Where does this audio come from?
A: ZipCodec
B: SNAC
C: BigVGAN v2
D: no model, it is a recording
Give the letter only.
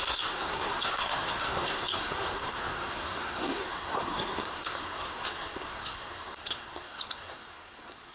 B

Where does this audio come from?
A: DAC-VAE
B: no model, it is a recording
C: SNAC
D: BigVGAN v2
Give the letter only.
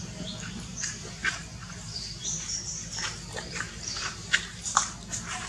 D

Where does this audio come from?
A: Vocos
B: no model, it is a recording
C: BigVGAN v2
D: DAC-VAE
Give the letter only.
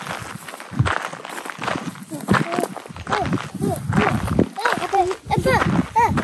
B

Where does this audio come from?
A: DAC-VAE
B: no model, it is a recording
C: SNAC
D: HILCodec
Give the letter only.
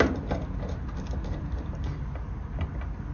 B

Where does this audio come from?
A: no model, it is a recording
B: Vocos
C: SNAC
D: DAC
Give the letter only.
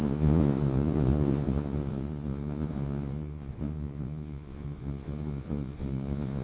B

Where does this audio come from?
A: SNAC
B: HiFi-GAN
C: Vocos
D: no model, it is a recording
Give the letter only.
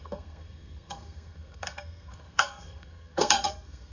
A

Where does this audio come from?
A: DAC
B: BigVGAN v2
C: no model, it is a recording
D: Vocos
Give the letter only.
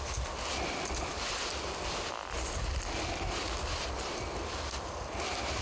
C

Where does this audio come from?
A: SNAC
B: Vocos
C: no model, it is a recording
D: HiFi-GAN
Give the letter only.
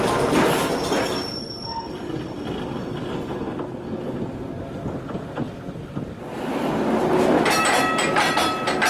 C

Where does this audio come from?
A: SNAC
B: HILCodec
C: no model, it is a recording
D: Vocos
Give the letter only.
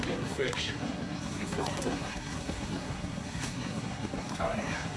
A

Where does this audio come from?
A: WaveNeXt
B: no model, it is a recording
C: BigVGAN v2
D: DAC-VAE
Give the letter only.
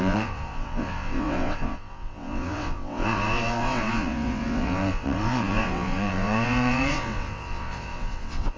A